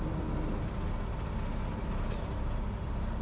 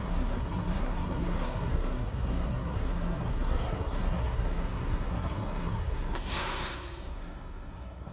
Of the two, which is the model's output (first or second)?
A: second